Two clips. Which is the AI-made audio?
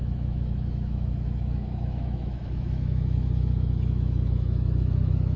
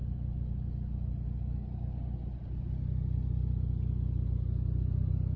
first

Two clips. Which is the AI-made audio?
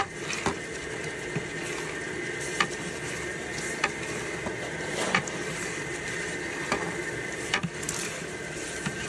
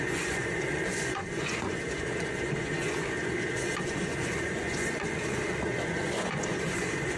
second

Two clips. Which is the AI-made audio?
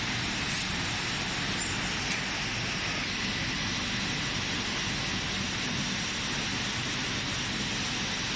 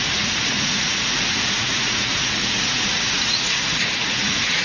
second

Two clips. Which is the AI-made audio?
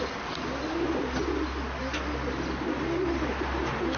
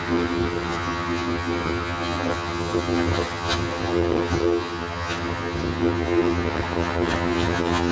second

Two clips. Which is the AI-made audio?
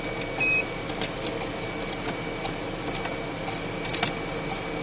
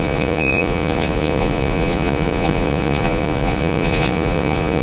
second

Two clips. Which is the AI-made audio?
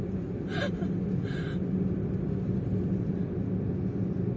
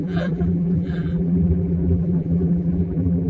second